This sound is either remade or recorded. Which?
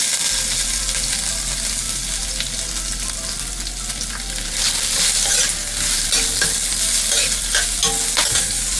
recorded